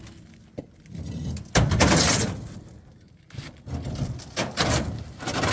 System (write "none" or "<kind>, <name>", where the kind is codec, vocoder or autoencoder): none